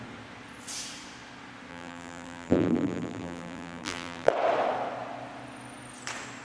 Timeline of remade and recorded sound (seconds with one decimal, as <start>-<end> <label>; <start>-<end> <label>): 0.0-1.7 recorded; 1.7-4.3 remade; 4.3-6.4 recorded